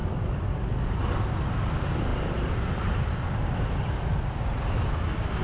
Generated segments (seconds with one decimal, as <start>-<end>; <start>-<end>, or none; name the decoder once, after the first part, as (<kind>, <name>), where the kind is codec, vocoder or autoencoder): 2.1-5.4 (vocoder, BigVGAN v2)